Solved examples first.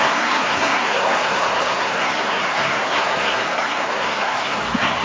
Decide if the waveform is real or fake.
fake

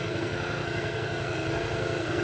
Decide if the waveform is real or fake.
fake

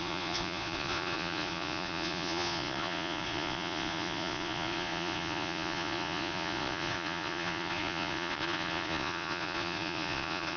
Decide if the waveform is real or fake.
fake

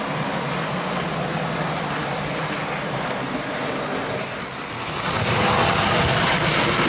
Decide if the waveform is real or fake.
real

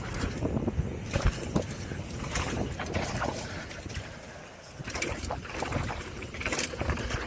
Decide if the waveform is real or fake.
real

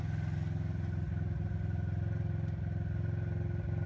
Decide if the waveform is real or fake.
real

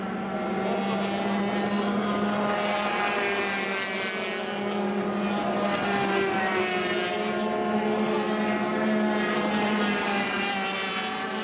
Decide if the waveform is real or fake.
real